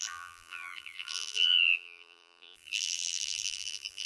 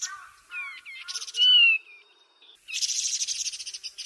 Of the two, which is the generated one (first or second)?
first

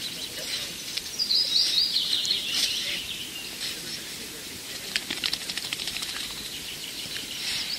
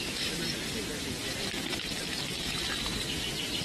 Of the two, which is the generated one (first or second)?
first